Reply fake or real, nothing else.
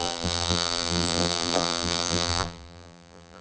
fake